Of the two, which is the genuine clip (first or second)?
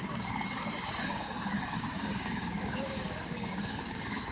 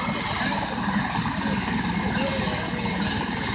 second